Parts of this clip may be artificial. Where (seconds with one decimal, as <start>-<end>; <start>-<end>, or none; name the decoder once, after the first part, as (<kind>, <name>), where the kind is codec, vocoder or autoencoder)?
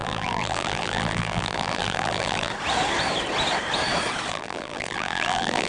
0.0-2.5 (vocoder, BigVGAN v2); 4.3-5.7